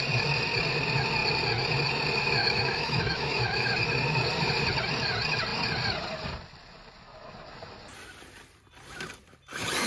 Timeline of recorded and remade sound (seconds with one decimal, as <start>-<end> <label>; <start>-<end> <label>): 0.0-2.4 recorded; 2.4-3.7 remade; 3.7-9.9 recorded